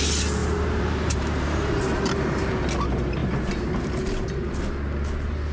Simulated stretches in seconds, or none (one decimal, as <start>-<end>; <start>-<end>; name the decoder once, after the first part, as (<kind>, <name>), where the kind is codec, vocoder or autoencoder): 0.4-2.5 (vocoder, BigVGAN v2); 3.2-4.5